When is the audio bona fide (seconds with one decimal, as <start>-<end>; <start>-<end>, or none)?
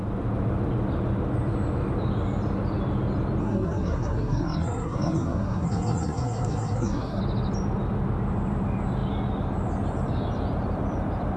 0.0-3.4; 7.2-11.4